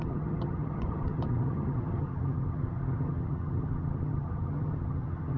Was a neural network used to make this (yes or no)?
yes